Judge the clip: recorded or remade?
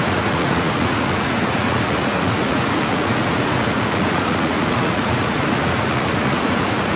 remade